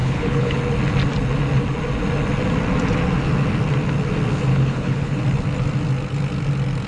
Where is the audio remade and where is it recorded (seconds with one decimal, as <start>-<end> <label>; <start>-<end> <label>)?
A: 0.0-0.6 remade; 0.6-4.5 recorded; 4.5-5.2 remade; 5.2-6.9 recorded

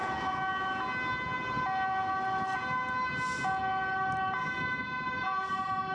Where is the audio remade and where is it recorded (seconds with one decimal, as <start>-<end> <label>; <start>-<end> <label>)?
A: 0.0-5.9 recorded